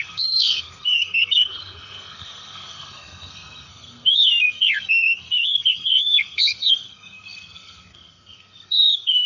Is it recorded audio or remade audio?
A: remade